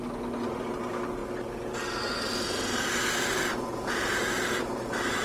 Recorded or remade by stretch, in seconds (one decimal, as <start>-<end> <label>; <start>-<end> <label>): 0.0-5.2 recorded